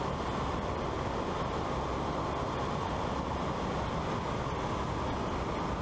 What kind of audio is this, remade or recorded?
recorded